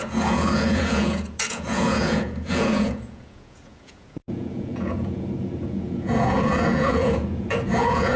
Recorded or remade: remade